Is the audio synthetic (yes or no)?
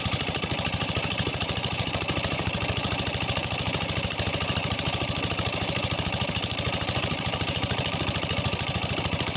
yes